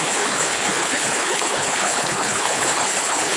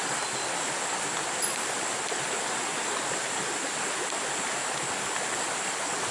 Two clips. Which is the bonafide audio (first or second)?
second